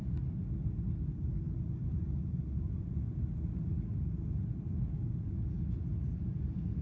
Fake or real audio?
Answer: real